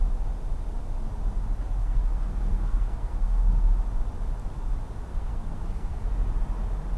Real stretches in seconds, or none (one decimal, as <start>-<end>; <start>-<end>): 0.0-1.8; 3.7-5.1; 6.1-7.0